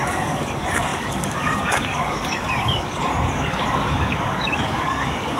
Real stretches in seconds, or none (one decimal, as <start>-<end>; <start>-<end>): none